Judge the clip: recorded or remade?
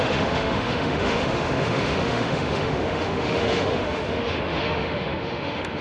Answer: remade